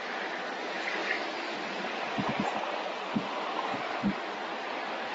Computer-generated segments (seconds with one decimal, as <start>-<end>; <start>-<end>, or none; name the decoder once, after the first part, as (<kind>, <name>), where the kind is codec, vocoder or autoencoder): none